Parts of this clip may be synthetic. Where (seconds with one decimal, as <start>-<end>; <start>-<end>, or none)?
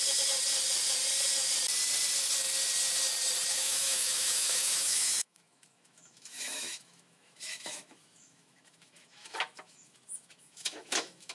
3.5-11.3